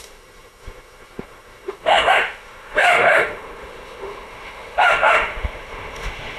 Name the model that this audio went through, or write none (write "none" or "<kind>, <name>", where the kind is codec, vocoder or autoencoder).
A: autoencoder, DAC-VAE